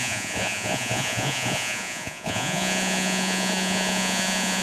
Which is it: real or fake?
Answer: fake